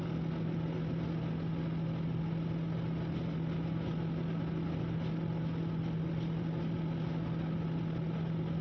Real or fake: real